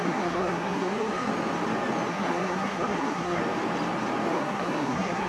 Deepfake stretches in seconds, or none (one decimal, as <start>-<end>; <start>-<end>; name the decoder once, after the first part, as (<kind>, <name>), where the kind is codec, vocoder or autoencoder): 0.0-1.3 (codec, SNAC); 2.1-3.4; 4.3-5.3